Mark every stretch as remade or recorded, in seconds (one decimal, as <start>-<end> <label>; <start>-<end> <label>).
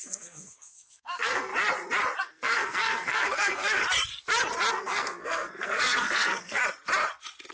0.0-1.5 remade; 1.5-2.2 recorded; 2.2-3.8 remade; 3.8-4.7 recorded; 4.7-6.6 remade; 6.6-7.5 recorded